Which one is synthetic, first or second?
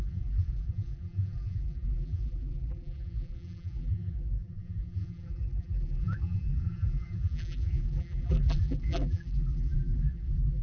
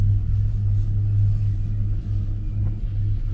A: first